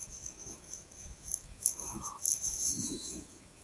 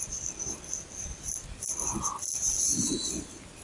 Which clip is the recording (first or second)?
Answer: second